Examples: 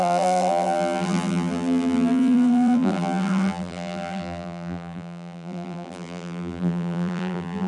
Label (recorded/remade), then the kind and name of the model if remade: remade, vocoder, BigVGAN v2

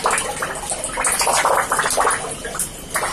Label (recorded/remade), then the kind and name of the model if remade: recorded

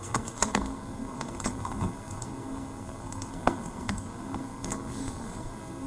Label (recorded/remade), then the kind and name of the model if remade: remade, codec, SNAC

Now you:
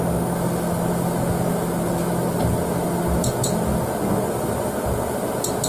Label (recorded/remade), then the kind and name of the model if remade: recorded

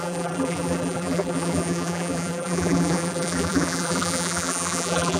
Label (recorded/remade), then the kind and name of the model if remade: remade, vocoder, BigVGAN v2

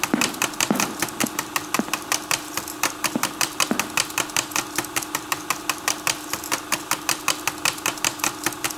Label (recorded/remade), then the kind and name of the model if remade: recorded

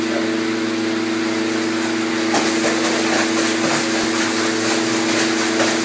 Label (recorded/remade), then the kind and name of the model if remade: recorded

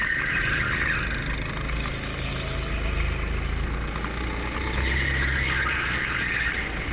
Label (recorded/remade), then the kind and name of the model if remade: recorded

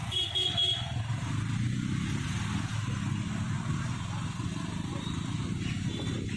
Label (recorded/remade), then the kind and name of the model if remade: recorded